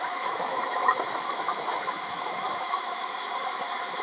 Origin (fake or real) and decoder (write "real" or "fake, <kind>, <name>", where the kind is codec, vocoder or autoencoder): fake, autoencoder, DAC-VAE